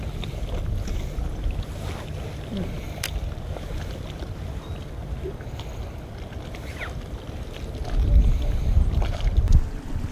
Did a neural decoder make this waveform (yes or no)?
no